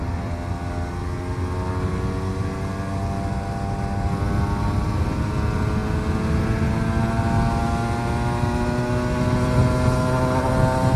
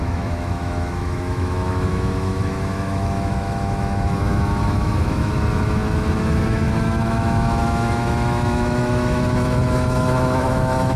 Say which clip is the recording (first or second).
first